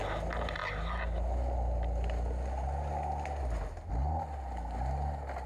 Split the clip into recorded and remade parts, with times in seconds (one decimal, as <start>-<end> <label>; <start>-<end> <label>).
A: 0.0-5.5 recorded